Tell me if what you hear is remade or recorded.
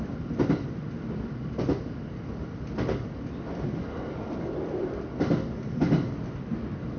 recorded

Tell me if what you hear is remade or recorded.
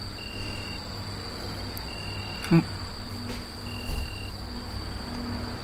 recorded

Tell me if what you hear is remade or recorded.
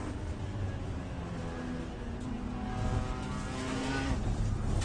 recorded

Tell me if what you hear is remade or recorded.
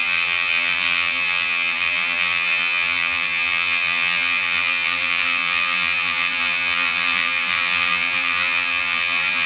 remade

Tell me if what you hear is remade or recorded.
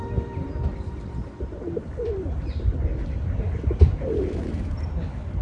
remade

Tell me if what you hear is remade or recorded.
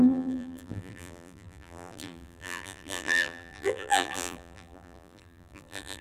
remade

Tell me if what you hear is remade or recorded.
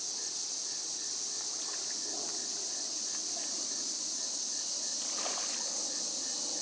recorded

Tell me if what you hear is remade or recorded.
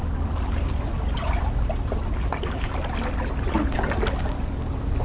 recorded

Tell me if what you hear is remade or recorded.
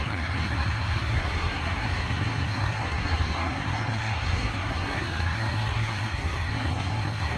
remade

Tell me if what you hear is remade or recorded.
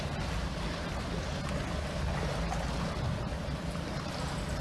recorded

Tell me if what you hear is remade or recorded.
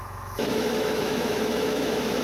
remade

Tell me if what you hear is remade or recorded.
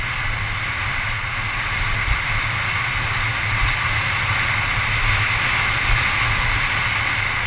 recorded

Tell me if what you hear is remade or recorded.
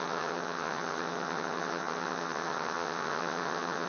remade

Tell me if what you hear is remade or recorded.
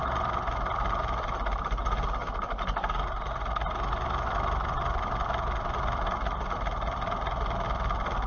recorded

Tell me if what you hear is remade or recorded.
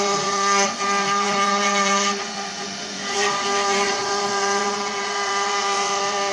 remade